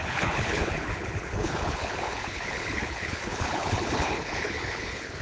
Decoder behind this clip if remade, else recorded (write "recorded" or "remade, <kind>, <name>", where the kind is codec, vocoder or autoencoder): remade, codec, HILCodec